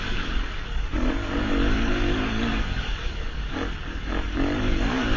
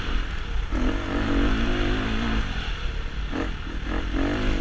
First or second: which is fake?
first